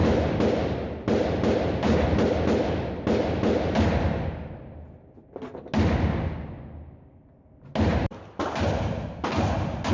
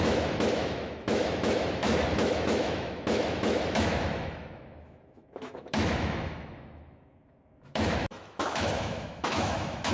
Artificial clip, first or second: second